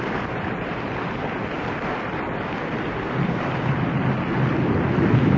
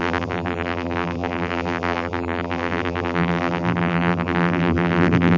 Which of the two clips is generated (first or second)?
second